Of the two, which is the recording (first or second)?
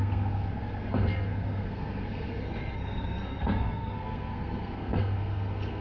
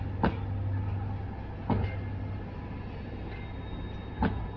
second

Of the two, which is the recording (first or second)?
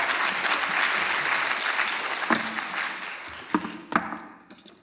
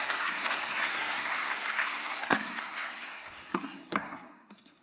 first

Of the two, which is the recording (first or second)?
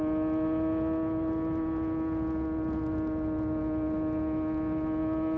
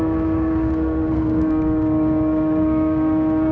first